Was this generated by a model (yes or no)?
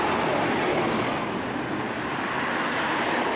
no